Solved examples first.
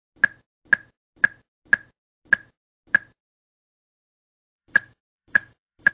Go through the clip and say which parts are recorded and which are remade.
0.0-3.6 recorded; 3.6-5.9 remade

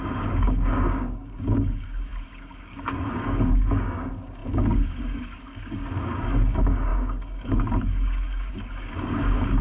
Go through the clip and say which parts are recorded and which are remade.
0.0-9.6 remade

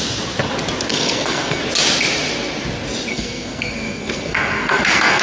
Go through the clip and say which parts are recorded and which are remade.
0.0-0.9 recorded; 0.9-1.6 remade; 1.6-3.1 recorded; 3.1-5.2 remade

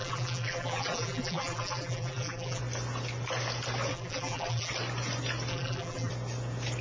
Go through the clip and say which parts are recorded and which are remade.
0.0-2.6 remade; 2.6-3.9 recorded; 3.9-4.7 remade; 4.7-5.5 recorded; 5.5-6.1 remade; 6.1-6.8 recorded